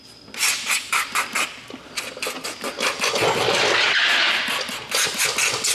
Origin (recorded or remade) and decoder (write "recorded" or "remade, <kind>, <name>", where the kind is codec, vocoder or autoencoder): recorded